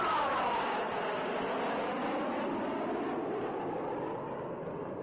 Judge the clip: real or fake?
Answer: real